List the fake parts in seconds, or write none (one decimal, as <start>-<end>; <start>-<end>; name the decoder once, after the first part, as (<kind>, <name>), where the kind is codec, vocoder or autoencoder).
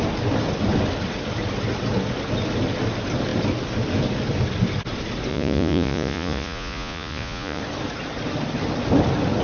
5.3-7.6 (vocoder, Vocos)